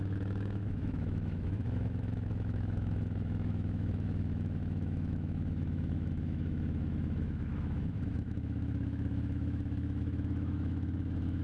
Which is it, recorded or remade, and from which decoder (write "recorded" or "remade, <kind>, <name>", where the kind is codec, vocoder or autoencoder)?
remade, autoencoder, DAC-VAE